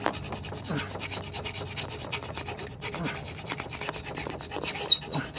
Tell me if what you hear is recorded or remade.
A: recorded